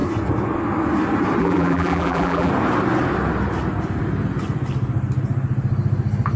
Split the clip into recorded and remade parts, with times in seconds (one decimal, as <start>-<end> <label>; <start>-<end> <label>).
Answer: 0.0-1.4 recorded; 1.4-2.5 remade; 2.5-6.4 recorded